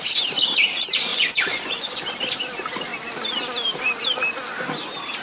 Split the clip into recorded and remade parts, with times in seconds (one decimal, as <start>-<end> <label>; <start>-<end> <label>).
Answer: 0.0-1.1 recorded; 1.1-2.0 remade; 2.0-5.2 recorded